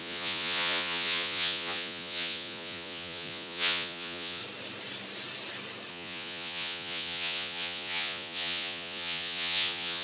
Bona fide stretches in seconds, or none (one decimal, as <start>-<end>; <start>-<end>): 4.4-5.9